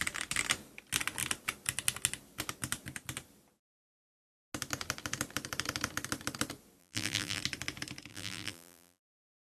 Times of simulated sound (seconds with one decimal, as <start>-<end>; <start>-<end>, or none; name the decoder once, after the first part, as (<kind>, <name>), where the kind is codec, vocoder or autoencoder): 6.8-7.4 (vocoder, BigVGAN v2); 8.1-9.0